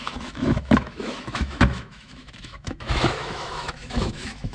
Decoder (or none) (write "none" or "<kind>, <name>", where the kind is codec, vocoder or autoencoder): autoencoder, DAC-VAE